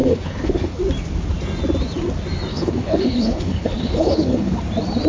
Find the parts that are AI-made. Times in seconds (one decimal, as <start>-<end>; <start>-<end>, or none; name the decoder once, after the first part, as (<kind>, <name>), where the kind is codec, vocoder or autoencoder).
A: 0.0-0.8 (codec, HILCodec); 2.5-4.6